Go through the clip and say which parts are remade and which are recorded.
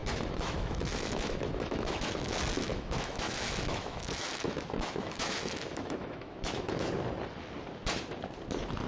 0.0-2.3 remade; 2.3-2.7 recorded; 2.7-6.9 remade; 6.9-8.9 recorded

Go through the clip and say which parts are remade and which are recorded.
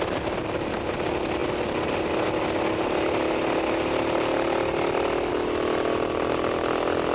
0.0-7.1 recorded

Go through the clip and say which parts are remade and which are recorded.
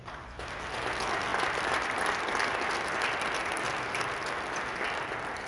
0.0-1.3 recorded; 1.3-4.6 remade; 4.6-5.5 recorded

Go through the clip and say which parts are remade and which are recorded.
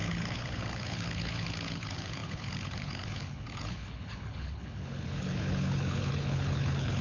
0.0-7.0 remade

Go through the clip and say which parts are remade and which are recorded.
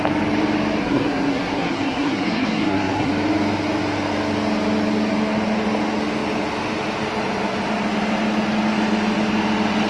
0.0-0.8 recorded; 0.8-3.1 remade; 3.1-9.9 recorded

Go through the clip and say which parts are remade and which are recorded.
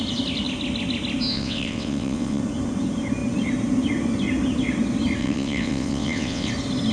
0.0-1.3 recorded; 1.3-2.4 remade; 2.4-5.2 recorded; 5.2-6.5 remade; 6.5-6.9 recorded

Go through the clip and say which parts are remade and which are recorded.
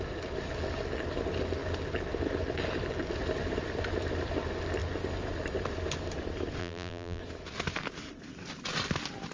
0.0-6.6 recorded; 6.6-7.2 remade; 7.2-9.3 recorded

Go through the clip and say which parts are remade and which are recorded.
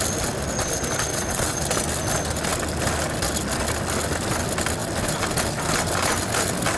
0.0-1.1 recorded; 1.1-1.6 remade; 1.6-6.8 recorded